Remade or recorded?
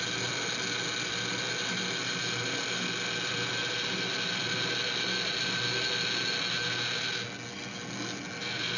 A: recorded